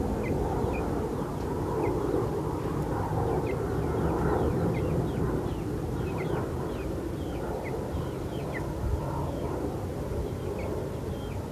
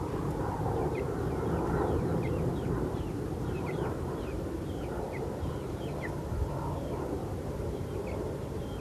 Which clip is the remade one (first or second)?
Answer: second